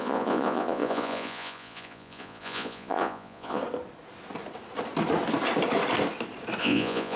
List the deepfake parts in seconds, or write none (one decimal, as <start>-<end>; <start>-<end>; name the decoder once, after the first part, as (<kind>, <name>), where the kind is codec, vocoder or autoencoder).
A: 0.0-3.6 (vocoder, Vocos); 6.6-7.2